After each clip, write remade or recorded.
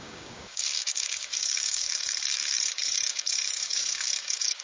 remade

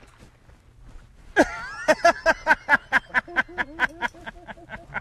recorded